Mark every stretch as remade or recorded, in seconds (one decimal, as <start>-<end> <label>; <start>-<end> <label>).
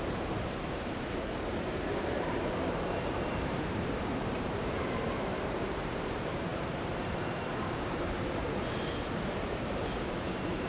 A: 0.0-10.7 remade